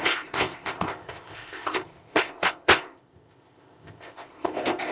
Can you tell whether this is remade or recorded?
remade